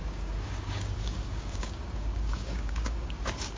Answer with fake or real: fake